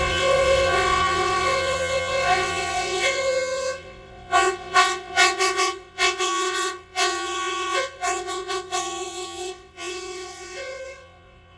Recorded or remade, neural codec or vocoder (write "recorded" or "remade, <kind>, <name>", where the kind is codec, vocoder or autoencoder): remade, vocoder, WaveNeXt